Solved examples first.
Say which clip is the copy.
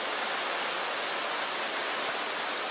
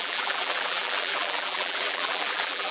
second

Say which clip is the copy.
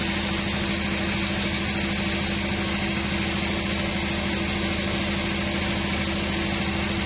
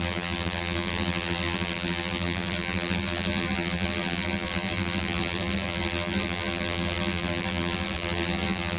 second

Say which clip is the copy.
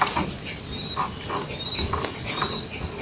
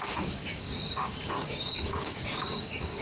second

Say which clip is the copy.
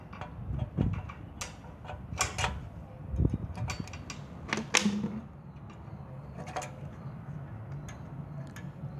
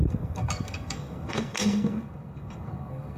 second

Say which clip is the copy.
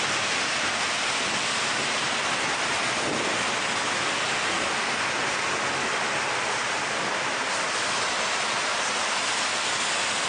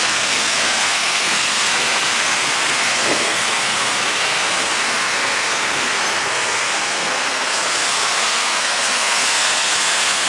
second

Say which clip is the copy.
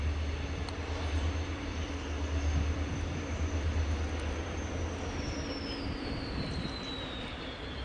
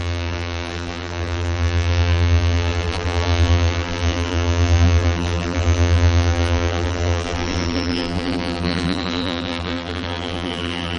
second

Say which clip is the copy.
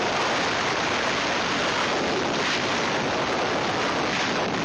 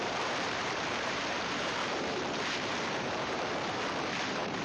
second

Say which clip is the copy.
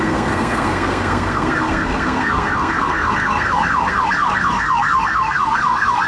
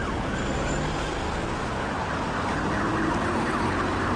first